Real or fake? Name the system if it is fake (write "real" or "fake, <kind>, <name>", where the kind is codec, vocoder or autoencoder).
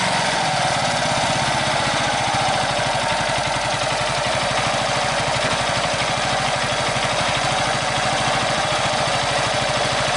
fake, vocoder, Vocos